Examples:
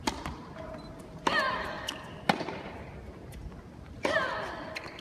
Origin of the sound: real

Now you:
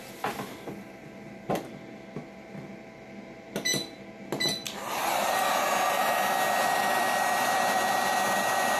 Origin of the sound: real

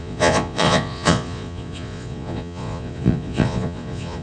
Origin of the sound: fake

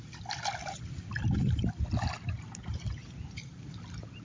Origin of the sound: real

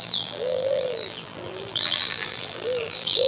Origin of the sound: fake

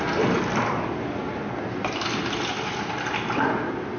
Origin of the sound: real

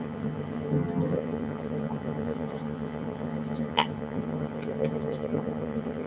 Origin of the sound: fake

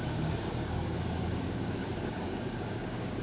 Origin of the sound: fake